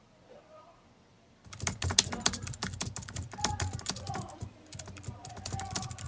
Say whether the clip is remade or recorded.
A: recorded